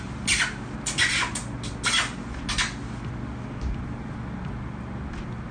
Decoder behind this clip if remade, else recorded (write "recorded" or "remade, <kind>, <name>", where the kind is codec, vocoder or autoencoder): recorded